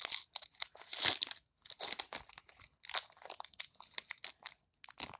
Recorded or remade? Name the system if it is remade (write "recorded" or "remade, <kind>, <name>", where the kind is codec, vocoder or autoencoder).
recorded